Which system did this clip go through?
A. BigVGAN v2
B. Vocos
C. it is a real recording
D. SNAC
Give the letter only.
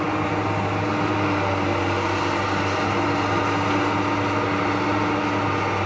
C